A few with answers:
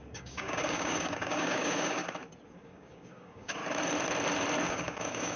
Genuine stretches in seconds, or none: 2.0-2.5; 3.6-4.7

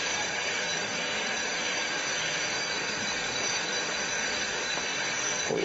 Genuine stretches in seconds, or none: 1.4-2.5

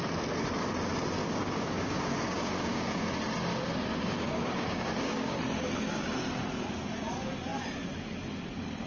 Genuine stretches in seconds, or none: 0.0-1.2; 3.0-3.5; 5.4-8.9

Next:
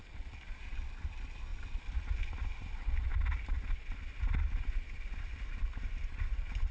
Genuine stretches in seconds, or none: 0.0-6.7

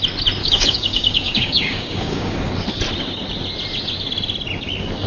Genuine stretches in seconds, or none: 0.0-0.4; 2.5-5.1